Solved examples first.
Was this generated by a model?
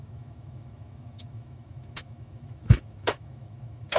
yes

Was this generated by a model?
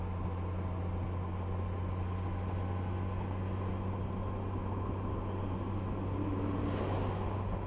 no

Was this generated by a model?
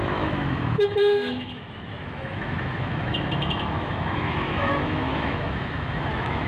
yes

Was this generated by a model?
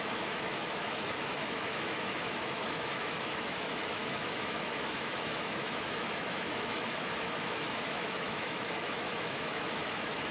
yes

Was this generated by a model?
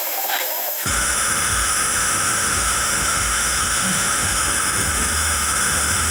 yes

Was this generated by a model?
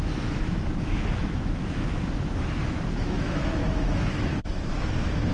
yes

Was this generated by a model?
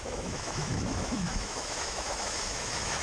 yes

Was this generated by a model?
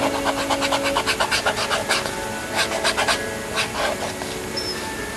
no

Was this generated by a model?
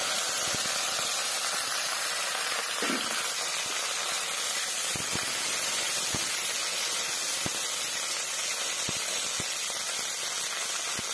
no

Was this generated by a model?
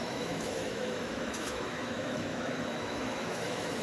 yes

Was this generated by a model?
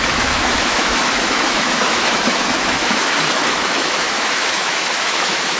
yes